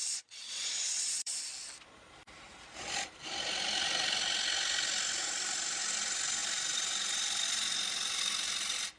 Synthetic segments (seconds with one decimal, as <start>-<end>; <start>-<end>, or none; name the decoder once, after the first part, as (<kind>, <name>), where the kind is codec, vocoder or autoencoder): 0.0-1.5 (vocoder, Vocos)